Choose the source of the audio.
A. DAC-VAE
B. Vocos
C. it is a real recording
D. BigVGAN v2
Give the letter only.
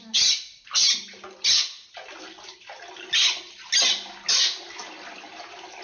C